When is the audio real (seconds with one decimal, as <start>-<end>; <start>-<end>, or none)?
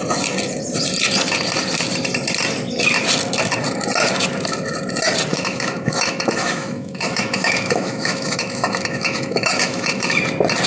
0.0-5.3; 10.2-10.7